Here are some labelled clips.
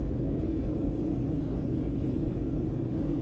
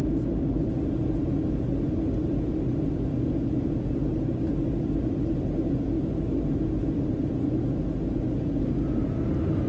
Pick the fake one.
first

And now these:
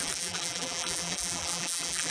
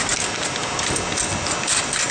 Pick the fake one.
first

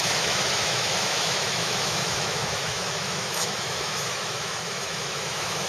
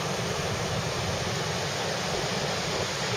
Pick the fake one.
first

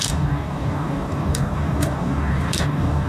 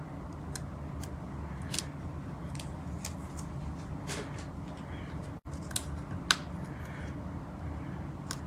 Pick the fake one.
first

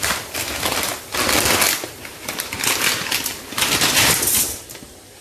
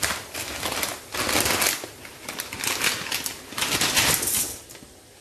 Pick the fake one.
first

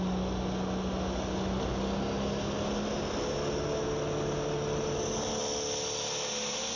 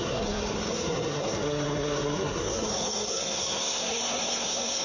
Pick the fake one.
second